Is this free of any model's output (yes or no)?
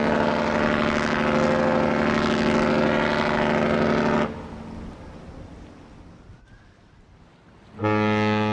yes